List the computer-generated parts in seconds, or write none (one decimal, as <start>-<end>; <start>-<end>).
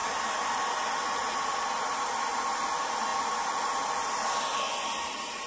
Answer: none